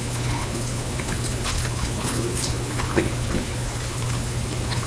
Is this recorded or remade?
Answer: remade